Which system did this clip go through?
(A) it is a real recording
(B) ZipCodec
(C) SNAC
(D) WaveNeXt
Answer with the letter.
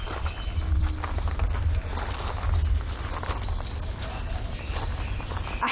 A